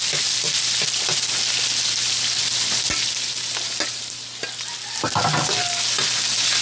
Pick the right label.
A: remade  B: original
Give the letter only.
B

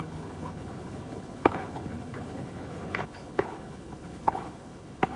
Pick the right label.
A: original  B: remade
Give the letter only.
B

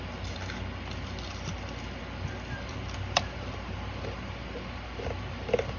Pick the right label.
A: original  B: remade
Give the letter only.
A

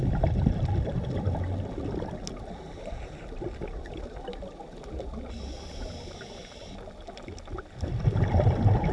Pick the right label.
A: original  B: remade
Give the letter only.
A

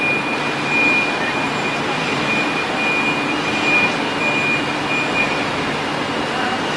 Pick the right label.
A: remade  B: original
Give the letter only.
B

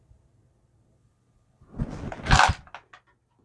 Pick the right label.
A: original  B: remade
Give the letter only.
A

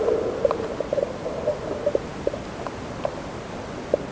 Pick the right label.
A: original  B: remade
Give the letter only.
A